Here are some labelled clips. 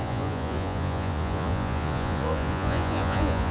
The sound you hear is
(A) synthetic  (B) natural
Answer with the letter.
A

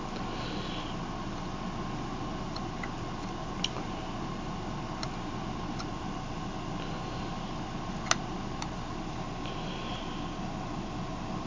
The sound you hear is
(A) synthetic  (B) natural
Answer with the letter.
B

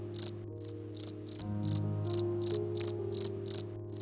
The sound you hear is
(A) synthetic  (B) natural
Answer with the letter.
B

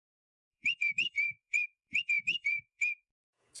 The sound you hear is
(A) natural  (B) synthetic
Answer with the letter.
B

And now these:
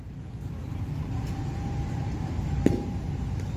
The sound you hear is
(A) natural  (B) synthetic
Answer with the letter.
A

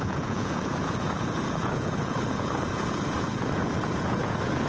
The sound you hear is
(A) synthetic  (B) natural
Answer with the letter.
A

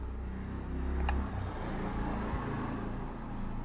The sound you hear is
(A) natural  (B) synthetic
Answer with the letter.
A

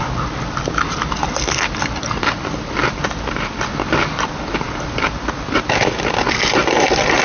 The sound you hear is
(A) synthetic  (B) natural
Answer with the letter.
B